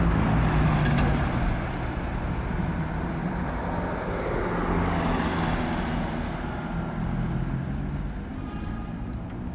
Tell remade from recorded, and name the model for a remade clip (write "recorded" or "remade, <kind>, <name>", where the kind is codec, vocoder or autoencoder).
recorded